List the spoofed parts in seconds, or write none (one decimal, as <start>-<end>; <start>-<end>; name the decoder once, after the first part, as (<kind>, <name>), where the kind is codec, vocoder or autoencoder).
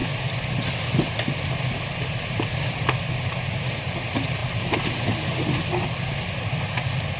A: none